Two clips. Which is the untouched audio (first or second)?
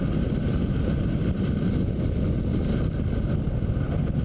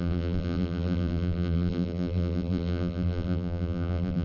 first